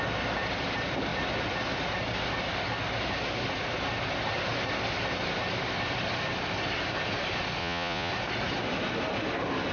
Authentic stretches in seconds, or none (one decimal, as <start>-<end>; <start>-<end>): 0.0-7.6; 8.1-9.7

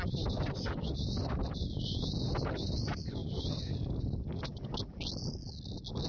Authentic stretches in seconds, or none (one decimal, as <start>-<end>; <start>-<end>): 0.0-6.1